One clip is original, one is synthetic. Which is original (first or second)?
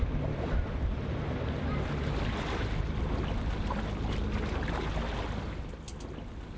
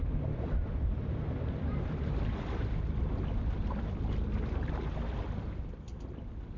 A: first